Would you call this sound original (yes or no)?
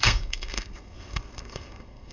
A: no